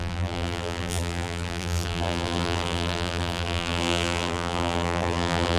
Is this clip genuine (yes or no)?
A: no